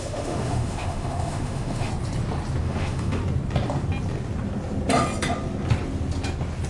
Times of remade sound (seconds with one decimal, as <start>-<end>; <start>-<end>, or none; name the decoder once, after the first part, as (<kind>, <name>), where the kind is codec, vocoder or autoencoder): 0.0-1.9 (autoencoder, DAC-VAE); 2.6-3.2